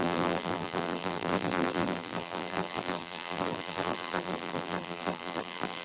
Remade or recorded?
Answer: remade